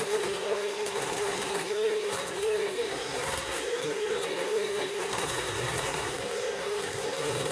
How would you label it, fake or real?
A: fake